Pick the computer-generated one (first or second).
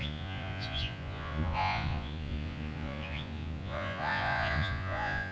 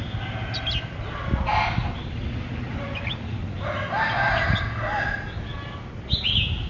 first